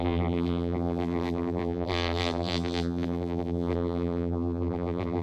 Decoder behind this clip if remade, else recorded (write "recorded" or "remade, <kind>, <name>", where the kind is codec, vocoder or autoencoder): remade, vocoder, BigVGAN v2